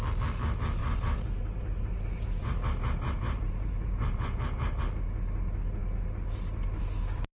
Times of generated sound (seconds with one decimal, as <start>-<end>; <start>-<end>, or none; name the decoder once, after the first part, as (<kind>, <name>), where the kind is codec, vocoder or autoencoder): 0.8-4.8 (vocoder, BigVGAN v2)